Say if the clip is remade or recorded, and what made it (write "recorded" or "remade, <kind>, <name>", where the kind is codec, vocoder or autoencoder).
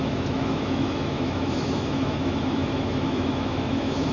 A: remade, autoencoder, DAC-VAE